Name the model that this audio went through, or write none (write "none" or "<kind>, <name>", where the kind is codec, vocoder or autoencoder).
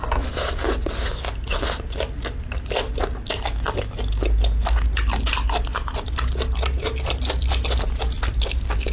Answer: none